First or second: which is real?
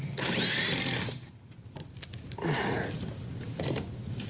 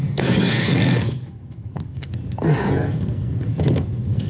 first